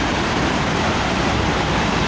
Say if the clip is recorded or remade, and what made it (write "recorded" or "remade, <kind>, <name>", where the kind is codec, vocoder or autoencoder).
remade, vocoder, BigVGAN v2